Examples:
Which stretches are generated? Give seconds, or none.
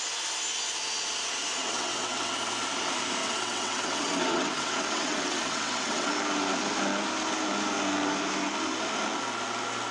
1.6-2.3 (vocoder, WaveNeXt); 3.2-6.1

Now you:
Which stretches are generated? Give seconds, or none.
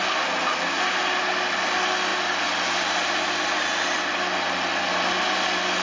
none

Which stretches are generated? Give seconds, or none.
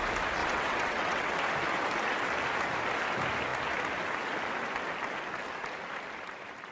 0.4-1.3 (vocoder, WaveNeXt)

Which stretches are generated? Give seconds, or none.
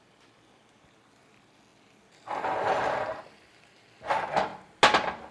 none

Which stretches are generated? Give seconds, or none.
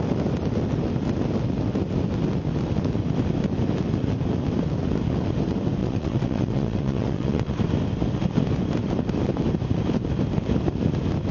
5.8-7.5 (vocoder, WaveNeXt)